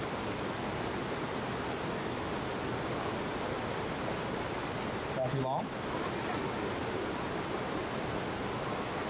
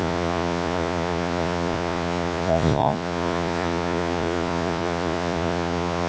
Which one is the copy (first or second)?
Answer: second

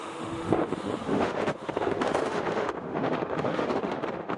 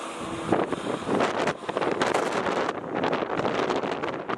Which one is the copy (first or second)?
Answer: first